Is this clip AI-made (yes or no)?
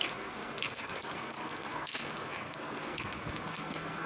yes